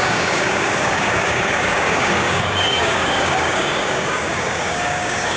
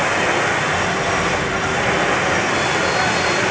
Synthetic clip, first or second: first